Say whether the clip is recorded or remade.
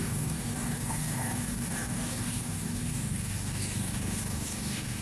remade